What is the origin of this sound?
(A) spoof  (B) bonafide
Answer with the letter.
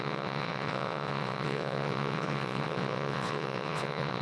A